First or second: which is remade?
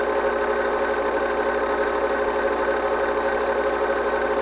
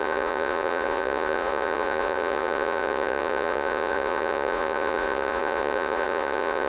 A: second